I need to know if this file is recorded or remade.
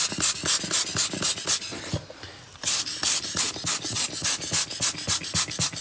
recorded